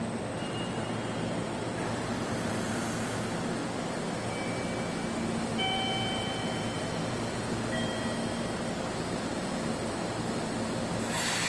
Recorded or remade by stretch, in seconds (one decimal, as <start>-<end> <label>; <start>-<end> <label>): 0.0-3.6 remade; 3.6-5.4 recorded; 5.4-8.2 remade; 8.2-8.9 recorded; 8.9-11.5 remade